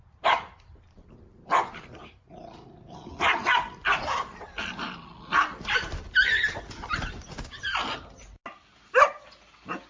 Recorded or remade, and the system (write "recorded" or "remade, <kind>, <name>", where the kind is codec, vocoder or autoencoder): recorded